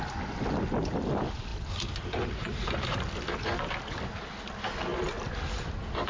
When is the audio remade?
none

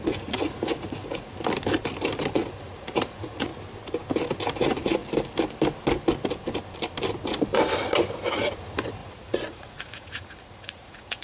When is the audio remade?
0.0-1.3; 2.3-3.5; 4.6-5.0; 8.3-11.2

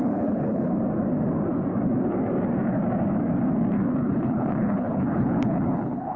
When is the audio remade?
0.0-0.8; 4.1-6.2

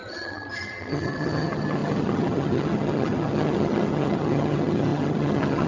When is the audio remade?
0.0-5.7

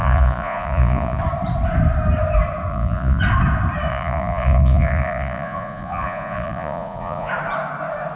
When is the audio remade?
0.0-1.2; 2.7-3.2; 3.9-7.3

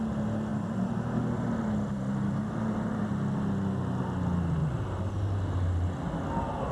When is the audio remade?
none

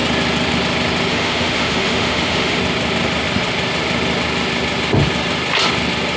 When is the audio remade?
1.1-2.6

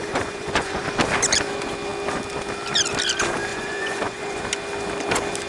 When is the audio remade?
0.0-0.8; 3.5-4.4